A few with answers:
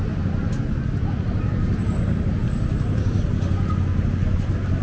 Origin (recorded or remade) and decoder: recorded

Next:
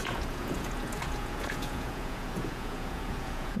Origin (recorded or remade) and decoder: remade, vocoder, Vocos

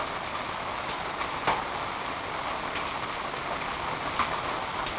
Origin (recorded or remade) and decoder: recorded